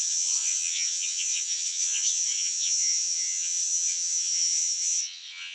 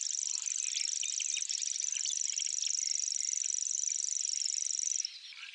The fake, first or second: first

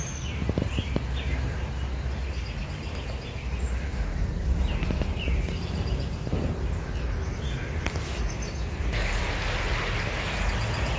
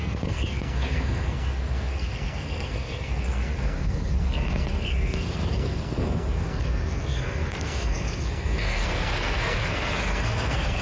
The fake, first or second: second